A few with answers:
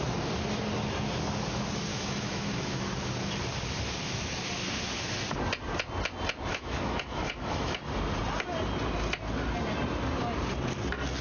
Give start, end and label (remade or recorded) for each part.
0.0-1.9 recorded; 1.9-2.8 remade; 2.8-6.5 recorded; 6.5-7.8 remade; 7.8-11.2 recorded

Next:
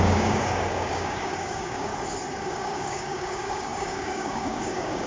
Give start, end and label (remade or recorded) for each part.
0.0-1.9 remade; 1.9-2.4 recorded; 2.4-5.1 remade

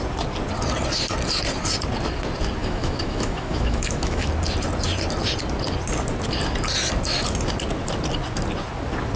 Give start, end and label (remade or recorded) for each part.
0.0-2.6 recorded; 2.6-4.3 remade; 4.3-9.2 recorded

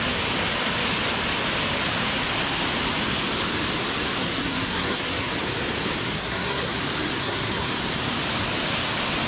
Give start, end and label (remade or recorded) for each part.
0.0-4.2 recorded; 4.2-5.3 remade; 5.3-6.0 recorded; 6.0-6.8 remade; 6.8-7.2 recorded; 7.2-7.7 remade; 7.7-9.3 recorded

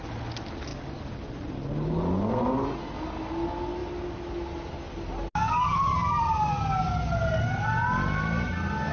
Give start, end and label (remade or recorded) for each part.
0.0-8.9 recorded

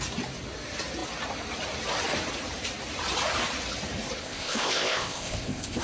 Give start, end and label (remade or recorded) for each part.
0.0-4.2 recorded; 4.2-5.8 remade

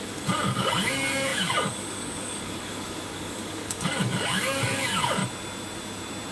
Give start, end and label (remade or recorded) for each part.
0.0-5.2 remade; 5.2-6.3 recorded

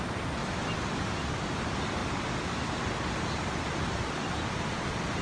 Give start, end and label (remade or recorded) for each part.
0.0-5.2 recorded